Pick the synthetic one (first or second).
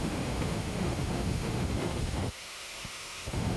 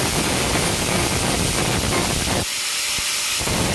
first